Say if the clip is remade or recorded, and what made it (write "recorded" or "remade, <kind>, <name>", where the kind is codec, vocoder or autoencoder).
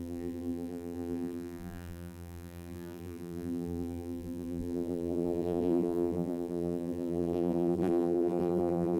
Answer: remade, vocoder, BigVGAN v2